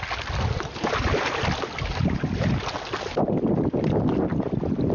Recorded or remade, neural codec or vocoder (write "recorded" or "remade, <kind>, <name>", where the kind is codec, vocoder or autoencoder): recorded